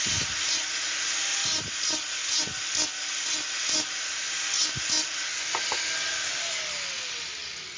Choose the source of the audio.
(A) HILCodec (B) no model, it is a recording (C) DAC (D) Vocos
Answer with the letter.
B